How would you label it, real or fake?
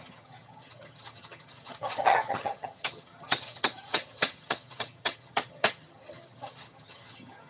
fake